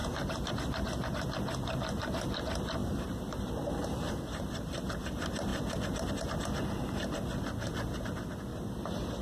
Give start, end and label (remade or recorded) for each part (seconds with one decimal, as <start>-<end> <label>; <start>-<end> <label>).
0.0-2.8 recorded; 2.8-5.0 remade; 5.0-8.5 recorded; 8.5-9.2 remade